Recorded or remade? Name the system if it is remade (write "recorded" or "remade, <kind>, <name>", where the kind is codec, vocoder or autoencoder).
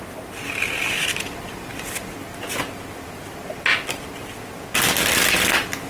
recorded